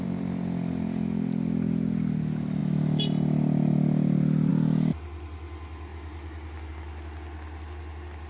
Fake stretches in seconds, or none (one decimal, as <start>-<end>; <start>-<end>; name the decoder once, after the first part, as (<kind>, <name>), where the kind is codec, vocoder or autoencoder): none